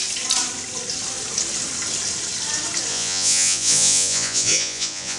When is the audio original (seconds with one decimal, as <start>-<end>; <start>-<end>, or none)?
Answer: 0.0-2.9